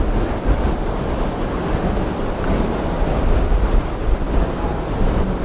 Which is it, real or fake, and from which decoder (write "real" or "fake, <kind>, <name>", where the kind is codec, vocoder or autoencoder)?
real